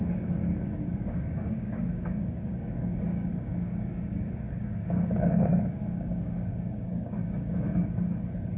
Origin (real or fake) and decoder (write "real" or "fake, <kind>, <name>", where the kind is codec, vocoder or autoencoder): fake, codec, DAC